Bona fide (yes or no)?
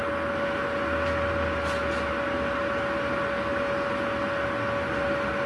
yes